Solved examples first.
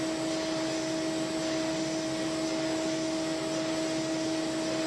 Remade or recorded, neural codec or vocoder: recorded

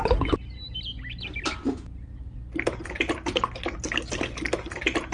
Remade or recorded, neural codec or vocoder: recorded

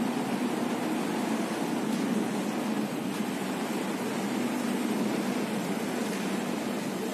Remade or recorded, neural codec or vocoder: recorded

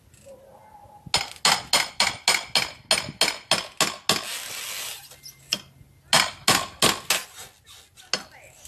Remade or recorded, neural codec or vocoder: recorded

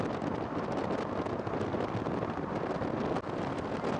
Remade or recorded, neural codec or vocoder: recorded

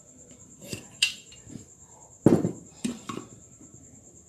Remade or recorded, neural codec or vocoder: remade, vocoder, BigVGAN v2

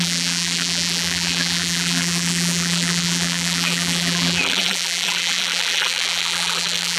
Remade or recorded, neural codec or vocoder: remade, vocoder, BigVGAN v2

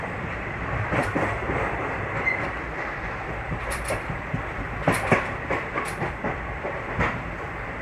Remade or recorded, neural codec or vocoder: remade, vocoder, BigVGAN v2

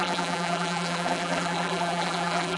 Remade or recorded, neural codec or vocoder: remade, vocoder, BigVGAN v2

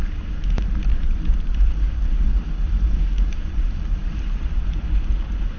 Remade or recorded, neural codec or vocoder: remade, vocoder, BigVGAN v2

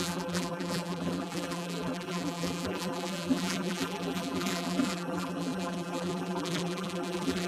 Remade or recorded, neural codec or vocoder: remade, vocoder, BigVGAN v2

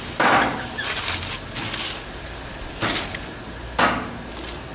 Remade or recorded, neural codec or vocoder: recorded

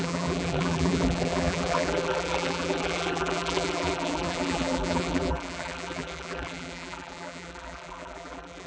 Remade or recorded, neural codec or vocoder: remade, vocoder, BigVGAN v2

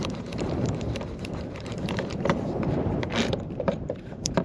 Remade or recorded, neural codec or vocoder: remade, vocoder, BigVGAN v2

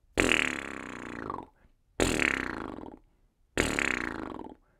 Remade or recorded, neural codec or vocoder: recorded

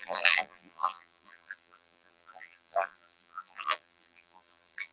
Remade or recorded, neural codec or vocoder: remade, vocoder, BigVGAN v2